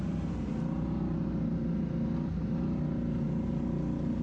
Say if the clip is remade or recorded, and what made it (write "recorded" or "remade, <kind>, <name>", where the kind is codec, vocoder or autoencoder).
recorded